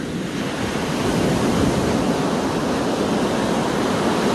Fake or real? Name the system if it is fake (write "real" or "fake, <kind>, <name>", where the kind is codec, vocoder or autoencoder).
real